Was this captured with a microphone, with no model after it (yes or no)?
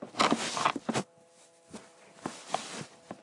no